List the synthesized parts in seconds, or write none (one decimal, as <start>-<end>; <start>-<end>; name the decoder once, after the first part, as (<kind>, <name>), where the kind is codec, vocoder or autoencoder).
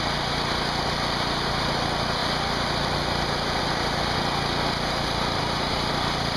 none